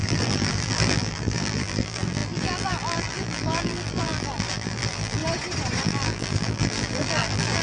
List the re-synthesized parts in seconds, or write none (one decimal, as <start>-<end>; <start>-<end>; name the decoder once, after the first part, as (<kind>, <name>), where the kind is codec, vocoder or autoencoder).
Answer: 0.0-5.2 (vocoder, BigVGAN v2); 5.8-7.6